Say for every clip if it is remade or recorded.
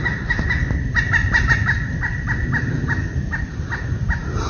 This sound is recorded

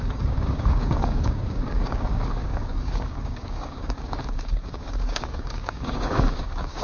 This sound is remade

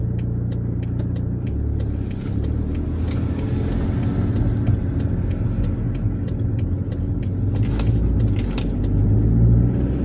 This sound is recorded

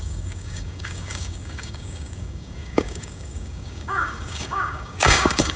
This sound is remade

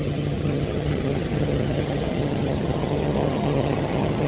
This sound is remade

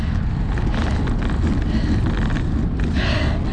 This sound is recorded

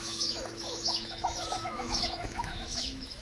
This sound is remade